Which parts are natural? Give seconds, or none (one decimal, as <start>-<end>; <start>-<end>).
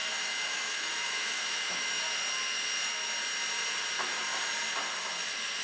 2.0-5.6